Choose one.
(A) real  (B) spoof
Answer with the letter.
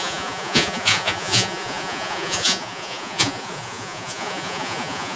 B